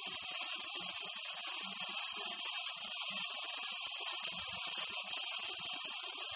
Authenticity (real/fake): real